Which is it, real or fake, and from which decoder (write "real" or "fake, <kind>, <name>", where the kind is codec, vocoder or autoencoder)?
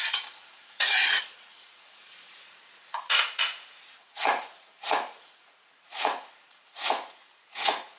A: fake, vocoder, Vocos